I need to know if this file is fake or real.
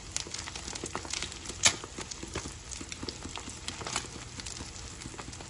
real